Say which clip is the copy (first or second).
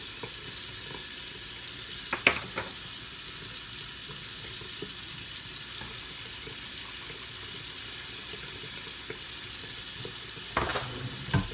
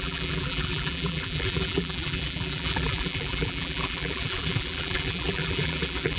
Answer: second